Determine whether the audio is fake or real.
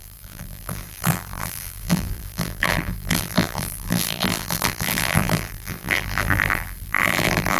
fake